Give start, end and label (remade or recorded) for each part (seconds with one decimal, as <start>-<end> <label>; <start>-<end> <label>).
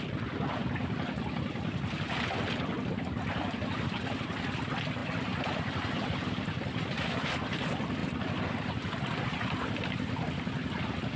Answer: 0.0-11.2 recorded